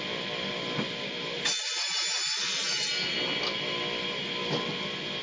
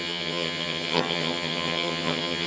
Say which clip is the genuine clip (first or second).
first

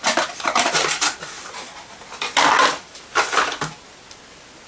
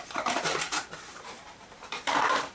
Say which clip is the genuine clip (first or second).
first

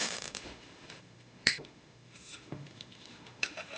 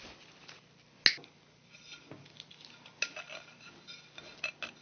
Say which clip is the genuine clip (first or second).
second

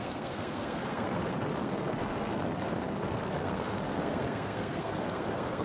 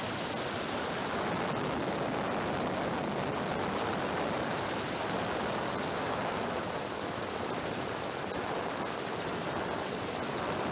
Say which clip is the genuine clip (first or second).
second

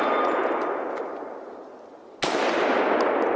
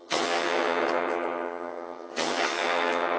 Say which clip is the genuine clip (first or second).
first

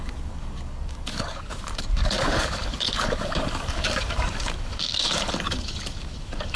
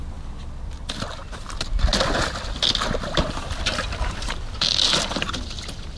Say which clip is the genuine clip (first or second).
second